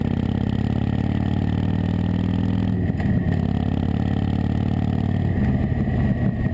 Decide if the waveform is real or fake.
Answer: real